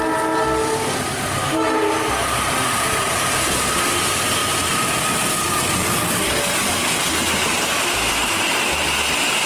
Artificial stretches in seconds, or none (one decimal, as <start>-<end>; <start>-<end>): none